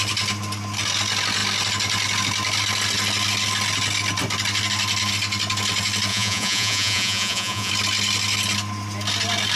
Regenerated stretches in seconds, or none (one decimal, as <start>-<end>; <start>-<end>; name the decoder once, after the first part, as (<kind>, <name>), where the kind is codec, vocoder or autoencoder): 6.1-7.7 (vocoder, Vocos)